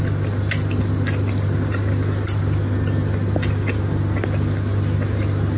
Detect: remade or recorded recorded